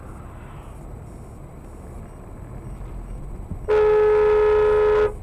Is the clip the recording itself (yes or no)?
yes